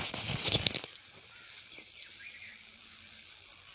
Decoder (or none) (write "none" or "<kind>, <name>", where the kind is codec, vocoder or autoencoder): none